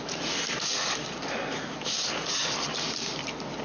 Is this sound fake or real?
real